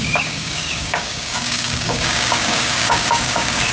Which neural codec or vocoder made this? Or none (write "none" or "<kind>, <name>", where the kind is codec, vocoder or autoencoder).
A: codec, DAC